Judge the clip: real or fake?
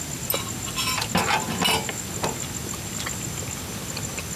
real